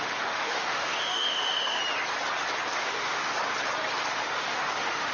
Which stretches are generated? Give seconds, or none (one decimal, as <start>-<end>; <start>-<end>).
0.0-1.8; 2.8-3.3; 4.1-5.1